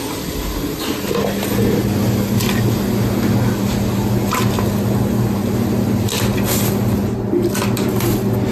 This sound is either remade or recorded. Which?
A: recorded